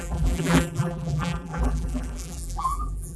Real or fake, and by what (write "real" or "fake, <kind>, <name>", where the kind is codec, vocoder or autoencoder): fake, vocoder, BigVGAN v2